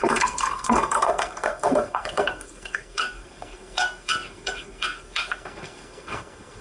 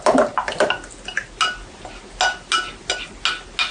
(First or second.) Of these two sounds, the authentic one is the second